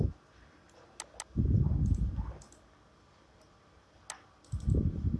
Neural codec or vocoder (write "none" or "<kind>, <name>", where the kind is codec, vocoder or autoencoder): none